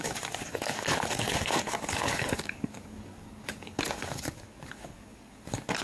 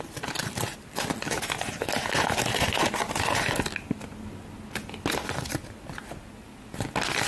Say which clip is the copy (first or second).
first